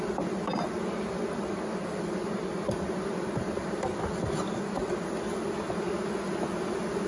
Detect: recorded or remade recorded